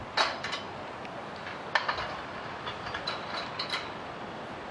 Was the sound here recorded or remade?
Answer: recorded